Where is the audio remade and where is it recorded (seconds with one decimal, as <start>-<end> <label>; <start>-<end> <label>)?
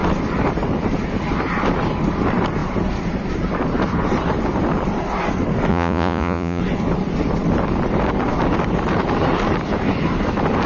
0.0-5.7 recorded; 5.7-6.6 remade; 6.6-10.7 recorded